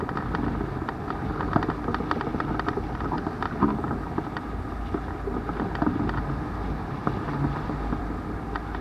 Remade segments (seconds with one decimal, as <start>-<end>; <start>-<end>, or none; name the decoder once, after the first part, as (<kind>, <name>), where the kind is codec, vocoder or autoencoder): none